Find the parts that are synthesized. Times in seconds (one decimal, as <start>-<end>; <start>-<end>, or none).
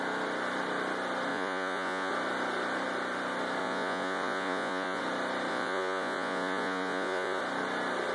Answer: 1.3-2.1; 3.6-5.0; 5.5-7.4